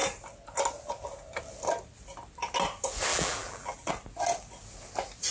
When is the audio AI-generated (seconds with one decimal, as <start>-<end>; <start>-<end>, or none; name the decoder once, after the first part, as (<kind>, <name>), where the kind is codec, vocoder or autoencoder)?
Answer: 3.1-3.9 (vocoder, BigVGAN v2)